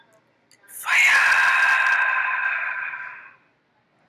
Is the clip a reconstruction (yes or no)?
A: no